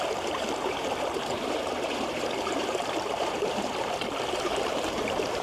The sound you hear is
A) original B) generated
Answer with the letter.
B